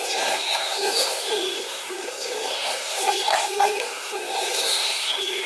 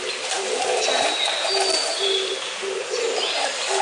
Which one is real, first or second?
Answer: second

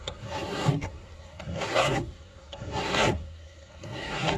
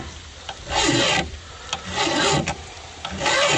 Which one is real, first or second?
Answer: second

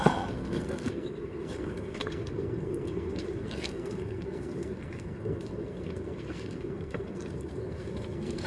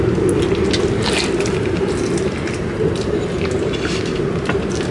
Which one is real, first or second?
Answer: second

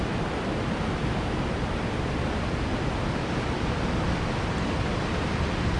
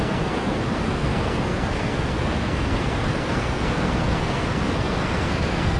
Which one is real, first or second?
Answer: first